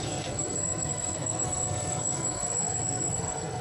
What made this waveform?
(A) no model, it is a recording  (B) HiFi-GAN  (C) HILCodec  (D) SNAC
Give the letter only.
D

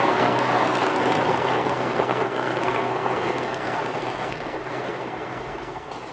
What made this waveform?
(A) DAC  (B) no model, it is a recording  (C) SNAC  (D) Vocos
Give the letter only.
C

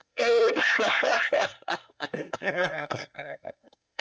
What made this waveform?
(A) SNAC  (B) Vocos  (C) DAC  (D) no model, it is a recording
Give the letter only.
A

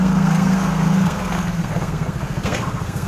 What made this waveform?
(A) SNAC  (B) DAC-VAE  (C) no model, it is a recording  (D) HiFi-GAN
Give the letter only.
A